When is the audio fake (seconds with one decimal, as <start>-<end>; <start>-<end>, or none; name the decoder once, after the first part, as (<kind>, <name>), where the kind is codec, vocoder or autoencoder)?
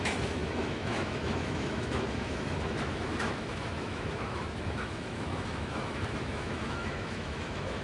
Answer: 0.0-7.8 (autoencoder, DAC-VAE)